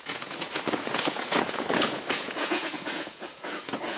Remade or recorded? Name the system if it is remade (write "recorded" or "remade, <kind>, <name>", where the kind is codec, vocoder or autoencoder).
remade, vocoder, Vocos